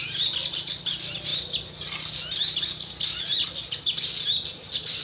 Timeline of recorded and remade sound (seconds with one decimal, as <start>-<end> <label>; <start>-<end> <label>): 0.0-5.0 recorded